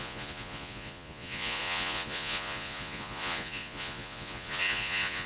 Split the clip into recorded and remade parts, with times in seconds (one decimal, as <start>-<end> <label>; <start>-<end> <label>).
0.0-5.3 remade